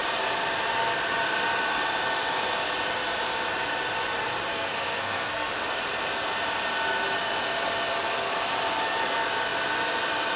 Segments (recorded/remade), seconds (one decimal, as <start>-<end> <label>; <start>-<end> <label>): 0.0-4.5 recorded; 4.5-5.5 remade; 5.5-10.4 recorded